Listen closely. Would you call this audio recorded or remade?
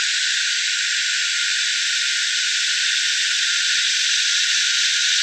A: recorded